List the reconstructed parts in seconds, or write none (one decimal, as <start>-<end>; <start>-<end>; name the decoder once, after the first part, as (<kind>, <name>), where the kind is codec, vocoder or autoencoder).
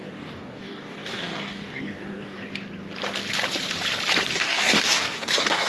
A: 0.0-2.4 (codec, DAC); 4.3-5.7